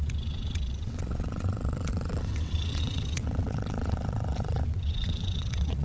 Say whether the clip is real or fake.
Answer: fake